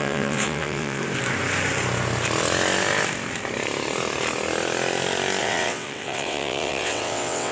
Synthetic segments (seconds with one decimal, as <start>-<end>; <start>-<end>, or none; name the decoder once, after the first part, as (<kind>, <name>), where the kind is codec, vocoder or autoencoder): 0.0-1.0 (vocoder, WaveNeXt); 5.4-7.5